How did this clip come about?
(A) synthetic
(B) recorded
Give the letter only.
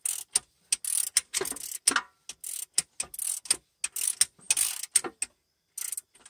B